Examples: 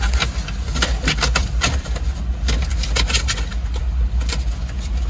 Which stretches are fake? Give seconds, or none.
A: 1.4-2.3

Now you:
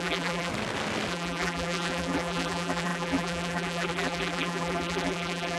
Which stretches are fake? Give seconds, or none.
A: 0.0-0.5; 1.1-5.6